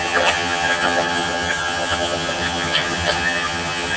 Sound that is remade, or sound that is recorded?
remade